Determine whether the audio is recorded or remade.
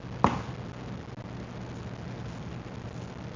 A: recorded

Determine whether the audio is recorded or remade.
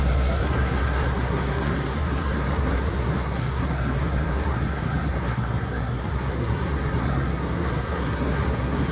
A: remade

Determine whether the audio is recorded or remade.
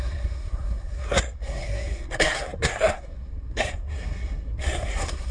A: remade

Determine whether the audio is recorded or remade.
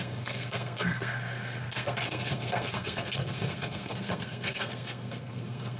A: remade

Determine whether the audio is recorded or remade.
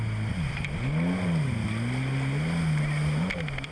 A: recorded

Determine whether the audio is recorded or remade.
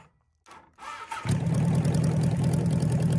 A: recorded